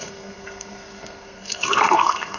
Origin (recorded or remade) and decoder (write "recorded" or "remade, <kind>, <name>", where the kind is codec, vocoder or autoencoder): remade, codec, SNAC